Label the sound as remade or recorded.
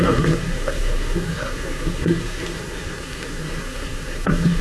remade